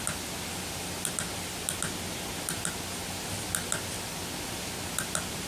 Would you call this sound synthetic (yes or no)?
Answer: no